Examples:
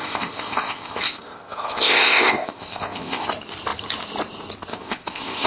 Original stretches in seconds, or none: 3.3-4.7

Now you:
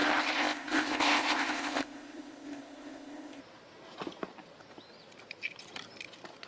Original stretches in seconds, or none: 3.4-6.5

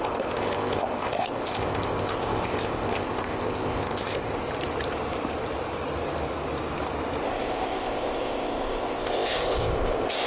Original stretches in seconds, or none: 4.4-7.3

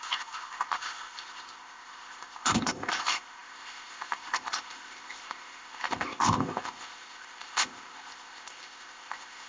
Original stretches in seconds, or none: none

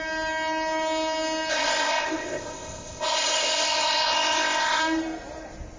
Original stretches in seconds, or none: 0.0-1.5; 4.8-5.8

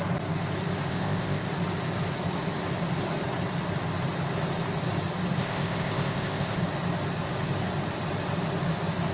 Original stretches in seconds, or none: 0.0-0.9; 1.5-5.4; 6.6-9.1

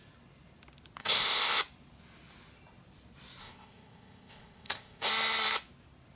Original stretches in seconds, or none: 0.0-1.0; 1.6-3.4; 5.1-6.2

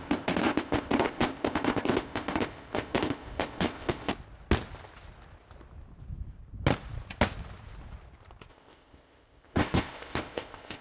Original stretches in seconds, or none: 4.1-8.5